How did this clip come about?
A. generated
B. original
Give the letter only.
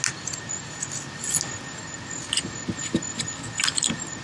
B